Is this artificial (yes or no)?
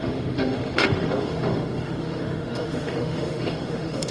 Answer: yes